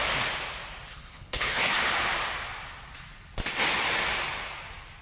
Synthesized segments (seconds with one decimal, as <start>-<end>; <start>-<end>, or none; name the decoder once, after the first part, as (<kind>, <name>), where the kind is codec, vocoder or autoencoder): 0.9-1.8 (codec, HILCodec)